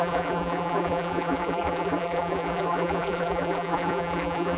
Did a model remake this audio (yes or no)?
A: yes